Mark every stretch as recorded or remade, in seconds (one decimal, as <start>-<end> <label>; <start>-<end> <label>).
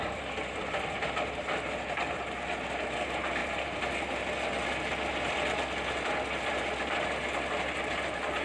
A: 0.0-8.4 recorded